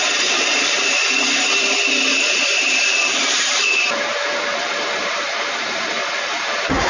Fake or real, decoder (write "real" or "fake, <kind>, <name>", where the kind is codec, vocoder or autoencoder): fake, vocoder, BigVGAN v2